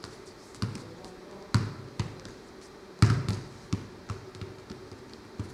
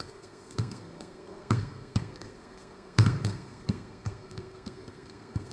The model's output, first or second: second